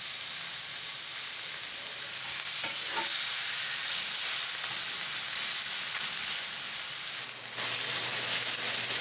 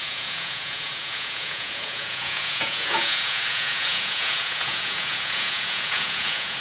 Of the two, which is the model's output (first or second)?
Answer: second